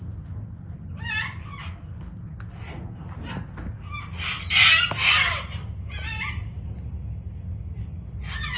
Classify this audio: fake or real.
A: real